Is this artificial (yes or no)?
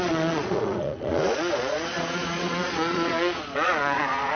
yes